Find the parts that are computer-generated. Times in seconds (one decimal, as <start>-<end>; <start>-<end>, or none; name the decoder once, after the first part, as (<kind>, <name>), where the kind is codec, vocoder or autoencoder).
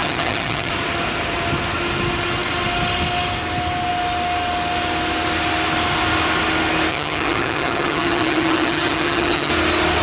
0.0-0.7 (vocoder, HiFi-GAN); 6.9-9.5